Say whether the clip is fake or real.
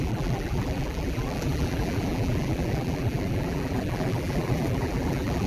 fake